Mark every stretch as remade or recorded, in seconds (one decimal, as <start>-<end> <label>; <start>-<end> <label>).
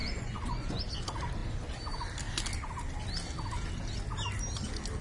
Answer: 0.0-0.8 remade; 0.8-5.0 recorded